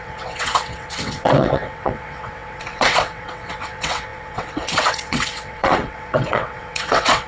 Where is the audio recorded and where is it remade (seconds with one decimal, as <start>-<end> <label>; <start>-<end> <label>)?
0.0-7.3 remade